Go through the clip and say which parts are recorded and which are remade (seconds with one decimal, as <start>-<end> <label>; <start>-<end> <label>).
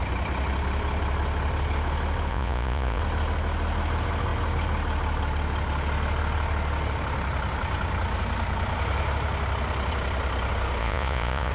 0.0-2.3 recorded; 2.3-3.0 remade; 3.0-10.8 recorded; 10.8-11.5 remade